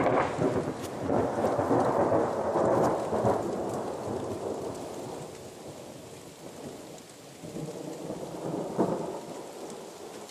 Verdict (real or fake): real